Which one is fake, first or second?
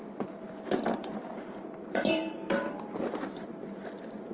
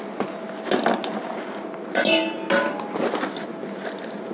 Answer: first